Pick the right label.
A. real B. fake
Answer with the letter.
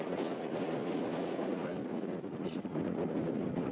B